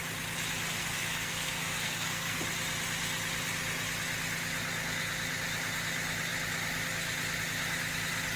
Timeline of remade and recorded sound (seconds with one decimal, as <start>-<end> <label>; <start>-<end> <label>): 0.0-0.7 recorded; 0.7-2.4 remade; 2.4-8.4 recorded